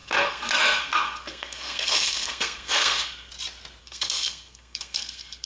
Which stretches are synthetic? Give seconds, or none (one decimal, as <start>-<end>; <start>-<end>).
0.0-3.3; 3.8-5.5